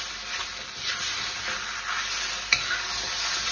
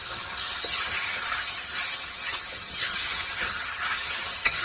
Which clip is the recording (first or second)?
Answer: first